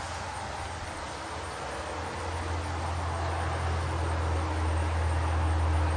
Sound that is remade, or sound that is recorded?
recorded